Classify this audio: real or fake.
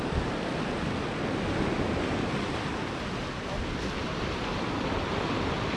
real